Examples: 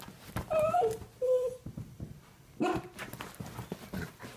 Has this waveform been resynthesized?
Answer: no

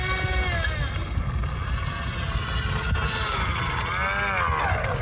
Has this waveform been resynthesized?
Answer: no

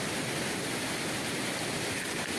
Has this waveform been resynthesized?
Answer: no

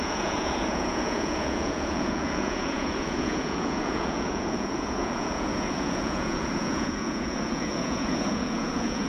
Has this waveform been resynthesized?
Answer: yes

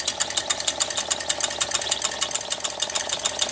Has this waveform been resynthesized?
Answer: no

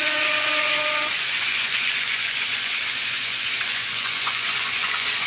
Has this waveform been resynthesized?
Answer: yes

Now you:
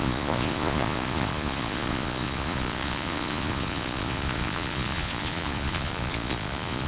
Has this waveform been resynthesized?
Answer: yes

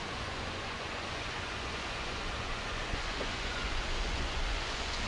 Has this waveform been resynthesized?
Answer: yes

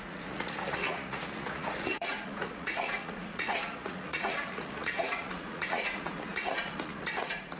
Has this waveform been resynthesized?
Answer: yes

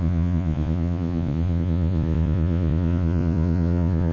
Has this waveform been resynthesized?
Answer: yes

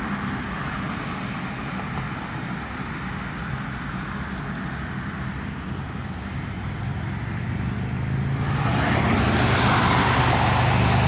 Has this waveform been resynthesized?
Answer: no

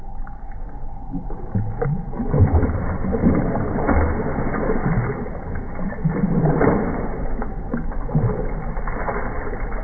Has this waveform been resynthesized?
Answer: no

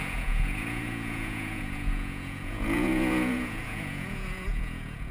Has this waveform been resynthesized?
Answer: yes